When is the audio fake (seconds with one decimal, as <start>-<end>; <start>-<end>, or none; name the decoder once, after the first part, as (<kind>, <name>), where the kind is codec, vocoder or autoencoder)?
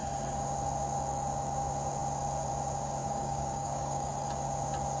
3.0-4.1 (codec, DAC)